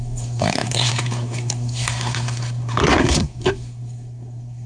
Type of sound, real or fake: fake